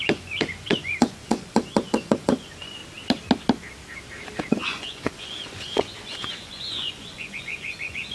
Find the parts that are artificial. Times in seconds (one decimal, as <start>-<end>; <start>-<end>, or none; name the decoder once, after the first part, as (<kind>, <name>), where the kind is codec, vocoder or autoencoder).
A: 0.0-2.8 (vocoder, Vocos); 4.5-8.1